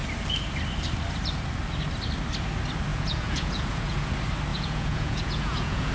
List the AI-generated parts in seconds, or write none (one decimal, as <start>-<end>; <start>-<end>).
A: 2.9-4.1; 4.5-5.9